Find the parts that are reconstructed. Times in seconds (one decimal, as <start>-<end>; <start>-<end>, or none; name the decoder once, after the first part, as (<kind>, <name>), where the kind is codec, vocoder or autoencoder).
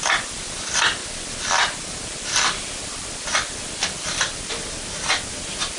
none